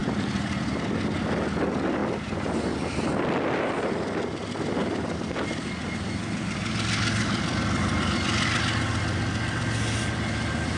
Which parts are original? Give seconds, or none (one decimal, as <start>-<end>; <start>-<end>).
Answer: 0.0-2.0; 3.1-6.6; 8.6-10.8